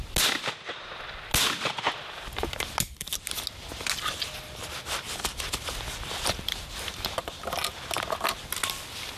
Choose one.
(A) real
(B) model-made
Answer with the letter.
A